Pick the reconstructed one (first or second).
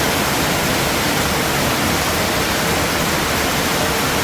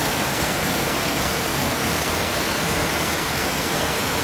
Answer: second